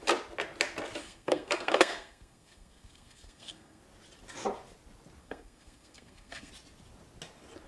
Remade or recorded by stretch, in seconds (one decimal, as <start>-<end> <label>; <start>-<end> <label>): 0.0-1.0 recorded; 1.0-3.8 remade; 3.8-5.2 recorded; 5.2-6.5 remade; 6.5-7.7 recorded